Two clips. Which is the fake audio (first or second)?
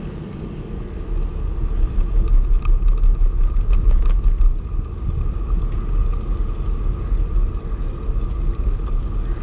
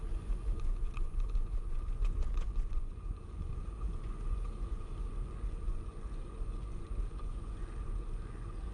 second